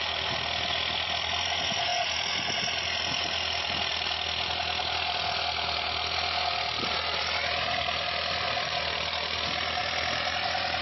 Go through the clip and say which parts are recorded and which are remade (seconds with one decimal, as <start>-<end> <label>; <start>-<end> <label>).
0.0-10.8 recorded